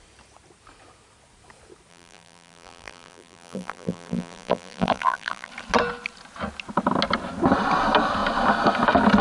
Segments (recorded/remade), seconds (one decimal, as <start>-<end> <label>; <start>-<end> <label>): 0.0-1.9 recorded; 1.9-5.5 remade; 5.5-9.2 recorded